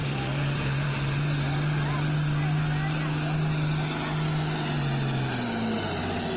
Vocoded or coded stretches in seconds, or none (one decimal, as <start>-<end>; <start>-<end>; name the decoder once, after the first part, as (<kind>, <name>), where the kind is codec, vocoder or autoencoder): 0.0-0.9 (vocoder, BigVGAN v2)